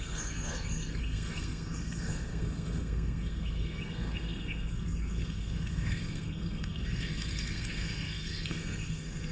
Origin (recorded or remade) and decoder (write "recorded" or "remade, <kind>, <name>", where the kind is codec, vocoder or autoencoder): remade, codec, SNAC